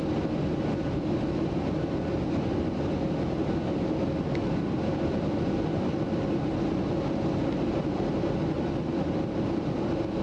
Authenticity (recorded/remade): recorded